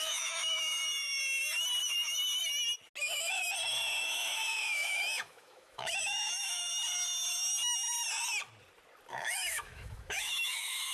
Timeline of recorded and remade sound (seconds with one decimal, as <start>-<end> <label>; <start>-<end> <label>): 0.0-1.2 remade; 1.2-1.8 recorded; 1.8-2.4 remade; 2.4-3.0 recorded; 3.0-3.4 remade; 3.4-4.0 recorded; 4.0-6.7 remade; 6.7-9.1 recorded; 9.1-10.9 remade